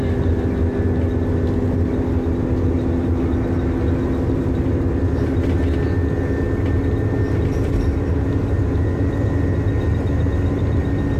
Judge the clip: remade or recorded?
recorded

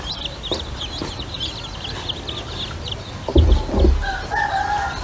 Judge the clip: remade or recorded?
recorded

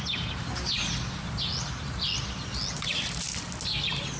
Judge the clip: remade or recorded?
recorded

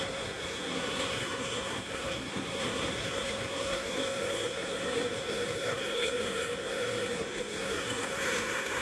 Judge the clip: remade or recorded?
remade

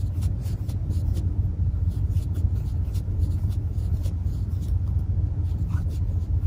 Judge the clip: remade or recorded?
recorded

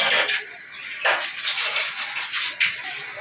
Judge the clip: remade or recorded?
recorded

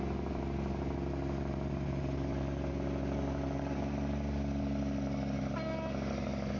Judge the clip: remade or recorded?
recorded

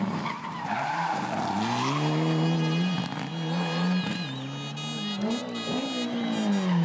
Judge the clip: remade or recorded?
recorded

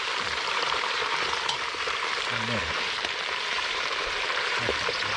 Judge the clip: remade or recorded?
remade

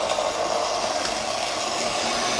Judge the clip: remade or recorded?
recorded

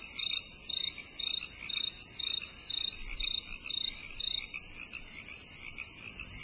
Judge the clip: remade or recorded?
recorded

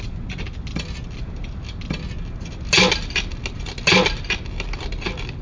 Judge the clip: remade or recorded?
recorded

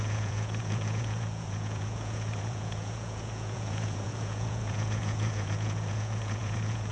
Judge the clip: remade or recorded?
remade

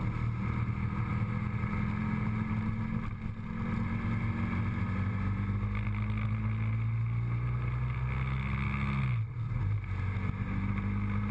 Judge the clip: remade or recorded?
recorded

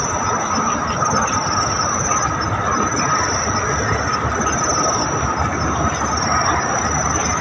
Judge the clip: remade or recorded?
recorded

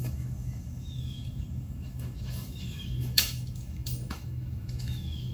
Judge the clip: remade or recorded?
remade